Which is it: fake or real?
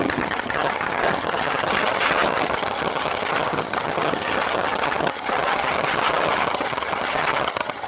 fake